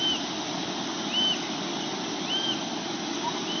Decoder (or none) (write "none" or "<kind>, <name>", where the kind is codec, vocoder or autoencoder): none